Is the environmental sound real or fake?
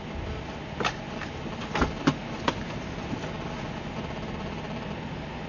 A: real